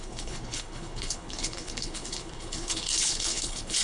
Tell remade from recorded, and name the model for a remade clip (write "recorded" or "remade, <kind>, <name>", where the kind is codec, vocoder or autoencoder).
remade, codec, HILCodec